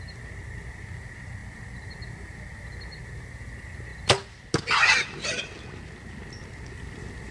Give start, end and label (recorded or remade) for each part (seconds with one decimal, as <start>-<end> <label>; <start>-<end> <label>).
0.0-7.3 recorded